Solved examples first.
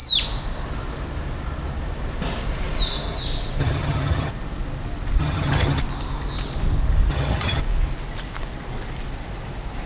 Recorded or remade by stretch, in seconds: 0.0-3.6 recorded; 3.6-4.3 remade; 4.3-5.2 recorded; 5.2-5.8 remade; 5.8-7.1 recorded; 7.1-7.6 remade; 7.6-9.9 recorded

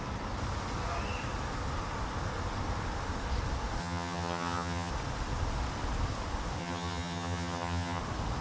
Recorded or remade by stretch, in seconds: 0.0-3.8 recorded; 3.8-4.9 remade; 4.9-6.6 recorded; 6.6-8.0 remade; 8.0-8.4 recorded

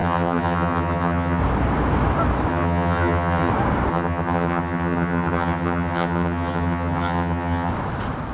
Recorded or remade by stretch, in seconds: 0.0-1.4 remade; 1.4-2.5 recorded; 2.5-3.5 remade; 3.5-3.9 recorded; 3.9-7.7 remade; 7.7-8.3 recorded

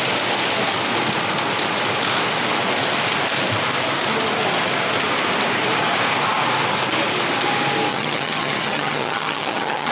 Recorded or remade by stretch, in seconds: 0.0-7.9 recorded; 7.9-9.9 remade

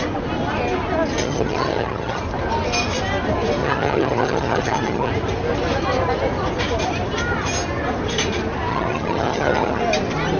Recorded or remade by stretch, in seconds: 0.0-1.2 recorded; 1.2-2.2 remade; 2.2-3.6 recorded; 3.6-5.1 remade; 5.1-8.7 recorded; 8.7-9.8 remade; 9.8-10.4 recorded

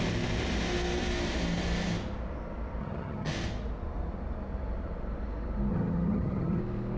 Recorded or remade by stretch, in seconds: 0.0-2.8 recorded; 2.8-3.3 remade; 3.3-5.7 recorded; 5.7-6.6 remade; 6.6-7.0 recorded

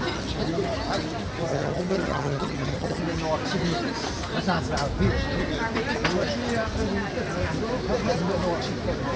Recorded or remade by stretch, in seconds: 0.0-1.5 recorded; 1.5-3.0 remade; 3.0-9.2 recorded